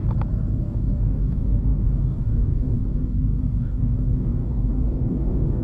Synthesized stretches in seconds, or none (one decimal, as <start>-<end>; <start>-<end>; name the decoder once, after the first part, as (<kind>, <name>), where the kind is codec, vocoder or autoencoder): 0.6-5.6 (codec, DAC)